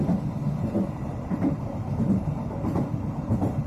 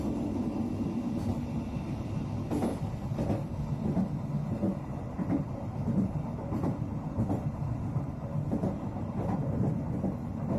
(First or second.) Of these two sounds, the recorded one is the second